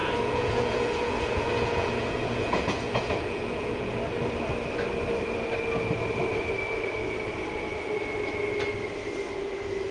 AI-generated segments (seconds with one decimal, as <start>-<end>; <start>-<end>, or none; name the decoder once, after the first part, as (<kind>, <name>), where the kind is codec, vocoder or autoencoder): 0.0-4.0 (vocoder, Vocos)